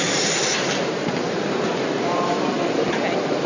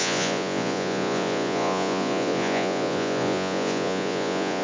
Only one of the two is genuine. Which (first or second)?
first